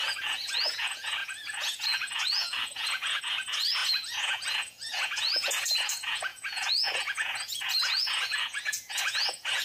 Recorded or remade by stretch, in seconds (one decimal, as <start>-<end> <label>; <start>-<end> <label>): 0.0-9.6 remade